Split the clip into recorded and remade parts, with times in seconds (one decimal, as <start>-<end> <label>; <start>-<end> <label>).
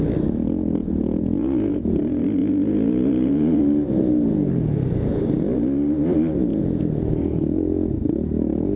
0.0-0.8 recorded; 0.8-2.0 remade; 2.0-2.4 recorded; 2.4-3.6 remade; 3.6-6.5 recorded; 6.5-7.0 remade; 7.0-8.8 recorded